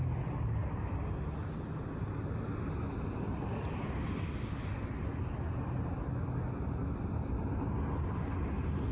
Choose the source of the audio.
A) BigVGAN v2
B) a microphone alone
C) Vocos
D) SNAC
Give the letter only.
B